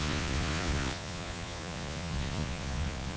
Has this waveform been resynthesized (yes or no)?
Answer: yes